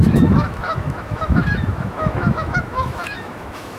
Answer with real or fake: fake